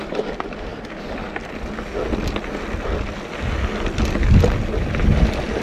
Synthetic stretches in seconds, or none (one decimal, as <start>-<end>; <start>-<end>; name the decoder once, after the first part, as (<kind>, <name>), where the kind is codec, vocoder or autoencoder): none